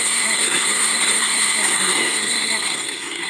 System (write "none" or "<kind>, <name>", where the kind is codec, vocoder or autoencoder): codec, SNAC